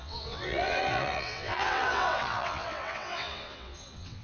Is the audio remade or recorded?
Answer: remade